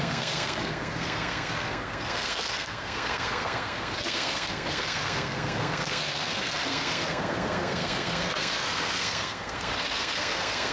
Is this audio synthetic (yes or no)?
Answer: yes